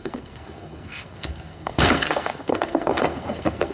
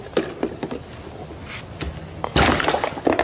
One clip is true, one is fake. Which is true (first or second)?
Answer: second